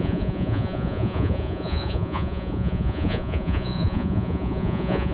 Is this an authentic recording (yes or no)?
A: no